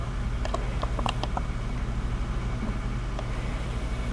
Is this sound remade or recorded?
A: recorded